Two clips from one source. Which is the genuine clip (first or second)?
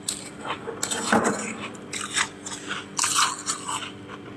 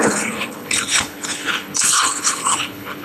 first